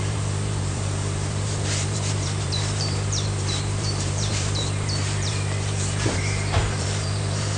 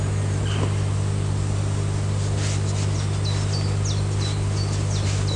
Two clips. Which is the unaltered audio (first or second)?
second